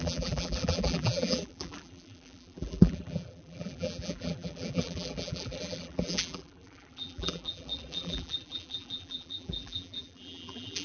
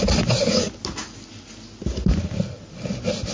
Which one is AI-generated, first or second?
first